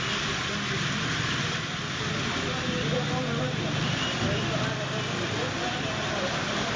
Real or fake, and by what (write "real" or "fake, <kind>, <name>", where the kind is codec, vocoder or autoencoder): real